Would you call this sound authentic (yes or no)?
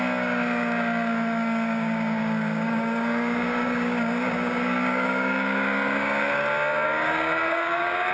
no